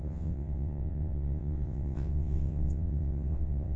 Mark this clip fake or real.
fake